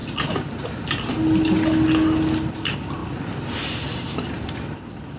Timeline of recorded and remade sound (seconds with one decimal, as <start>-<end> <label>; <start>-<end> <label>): 0.0-5.2 recorded

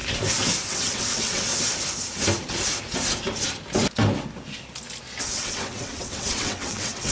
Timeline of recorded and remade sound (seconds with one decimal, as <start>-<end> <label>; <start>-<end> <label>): 0.0-0.7 recorded; 0.7-1.5 remade; 1.5-5.2 recorded; 5.2-7.1 remade